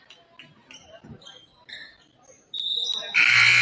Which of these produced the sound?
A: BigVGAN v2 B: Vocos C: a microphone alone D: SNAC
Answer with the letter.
C